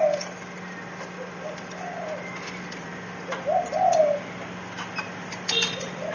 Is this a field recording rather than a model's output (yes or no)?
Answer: yes